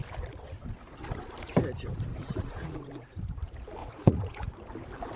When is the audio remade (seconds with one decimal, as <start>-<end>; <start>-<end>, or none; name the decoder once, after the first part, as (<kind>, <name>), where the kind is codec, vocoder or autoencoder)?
2.1-3.2 (vocoder, Vocos); 3.8-4.5